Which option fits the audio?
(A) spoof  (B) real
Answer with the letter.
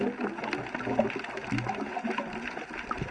B